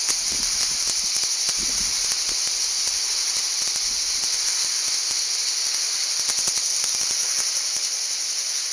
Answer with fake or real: real